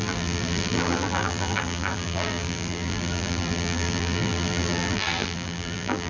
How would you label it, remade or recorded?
remade